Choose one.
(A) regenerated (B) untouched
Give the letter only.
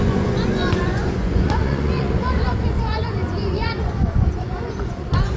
A